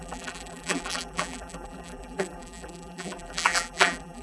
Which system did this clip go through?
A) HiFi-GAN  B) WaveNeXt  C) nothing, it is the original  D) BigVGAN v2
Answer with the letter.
D